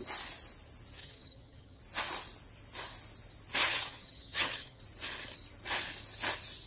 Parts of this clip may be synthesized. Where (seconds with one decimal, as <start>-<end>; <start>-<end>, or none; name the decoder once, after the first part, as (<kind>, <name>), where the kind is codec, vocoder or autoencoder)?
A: 1.0-1.8 (vocoder, HiFi-GAN); 3.6-4.8

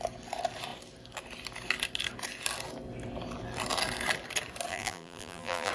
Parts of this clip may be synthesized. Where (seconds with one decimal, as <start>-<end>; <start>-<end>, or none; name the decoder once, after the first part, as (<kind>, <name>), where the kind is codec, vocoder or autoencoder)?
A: 4.7-5.7 (vocoder, BigVGAN v2)